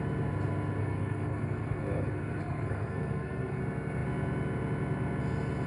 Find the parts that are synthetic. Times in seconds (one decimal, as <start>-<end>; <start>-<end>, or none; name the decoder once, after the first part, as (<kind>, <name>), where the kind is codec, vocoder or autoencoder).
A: 0.8-3.6 (codec, SNAC)